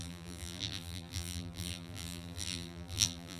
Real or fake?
fake